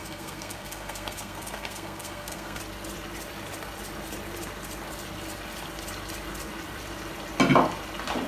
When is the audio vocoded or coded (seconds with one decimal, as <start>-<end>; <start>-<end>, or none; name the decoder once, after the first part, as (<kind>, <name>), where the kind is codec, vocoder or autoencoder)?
0.0-2.6 (codec, SNAC)